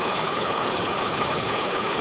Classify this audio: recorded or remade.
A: remade